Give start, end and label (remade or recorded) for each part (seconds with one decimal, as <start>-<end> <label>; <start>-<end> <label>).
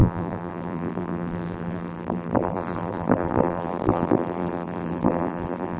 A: 0.0-5.8 remade